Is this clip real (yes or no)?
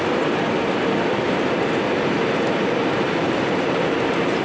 yes